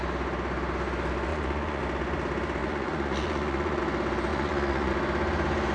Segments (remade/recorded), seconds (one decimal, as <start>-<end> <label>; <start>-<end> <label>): 0.0-1.3 recorded; 1.3-1.8 remade; 1.8-2.6 recorded; 2.6-3.8 remade; 3.8-4.3 recorded; 4.3-4.9 remade; 4.9-5.7 recorded